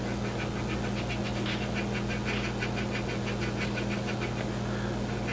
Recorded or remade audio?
recorded